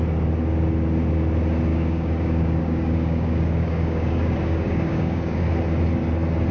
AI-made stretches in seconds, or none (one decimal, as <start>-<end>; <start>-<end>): 1.7-5.5